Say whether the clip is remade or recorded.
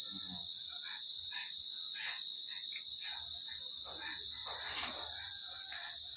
recorded